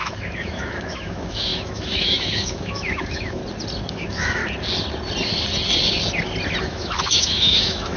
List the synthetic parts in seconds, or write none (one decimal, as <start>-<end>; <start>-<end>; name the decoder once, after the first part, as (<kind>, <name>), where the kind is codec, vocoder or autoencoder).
0.0-3.4 (autoencoder, DAC-VAE); 3.9-4.4; 6.6-8.0